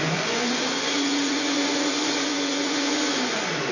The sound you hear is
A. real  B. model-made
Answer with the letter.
B